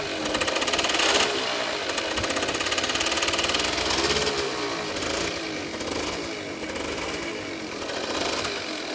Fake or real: real